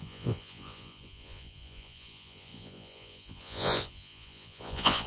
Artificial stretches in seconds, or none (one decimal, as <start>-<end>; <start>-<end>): 0.0-5.1